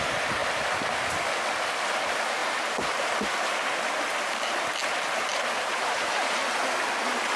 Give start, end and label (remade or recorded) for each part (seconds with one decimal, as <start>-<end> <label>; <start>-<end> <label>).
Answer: 0.0-2.4 recorded; 2.4-3.1 remade; 3.1-4.1 recorded; 4.1-4.6 remade; 4.6-5.3 recorded; 5.3-6.3 remade; 6.3-7.4 recorded